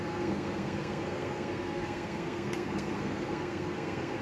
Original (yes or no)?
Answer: no